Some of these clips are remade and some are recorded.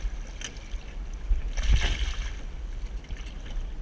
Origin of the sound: recorded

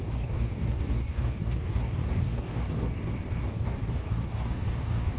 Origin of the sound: remade